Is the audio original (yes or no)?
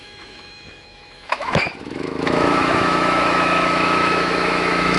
no